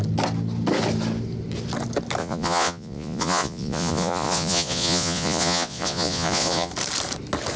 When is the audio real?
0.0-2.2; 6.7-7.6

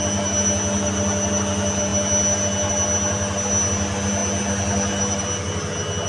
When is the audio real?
0.0-6.1

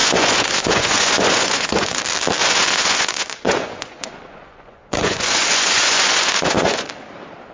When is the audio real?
2.0-2.4; 6.9-7.5

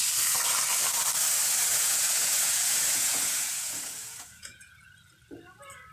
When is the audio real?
0.0-1.7; 4.8-5.9

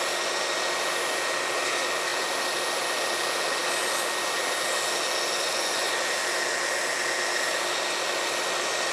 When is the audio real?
0.0-5.4; 5.9-8.9

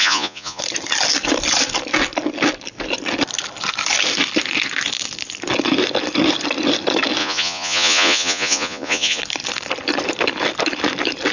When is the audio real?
0.6-7.2; 9.2-11.3